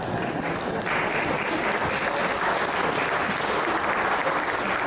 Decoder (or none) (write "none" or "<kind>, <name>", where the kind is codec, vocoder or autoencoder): none